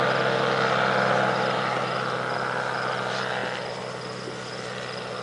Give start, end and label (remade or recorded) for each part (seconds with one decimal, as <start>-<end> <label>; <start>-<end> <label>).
0.0-5.2 recorded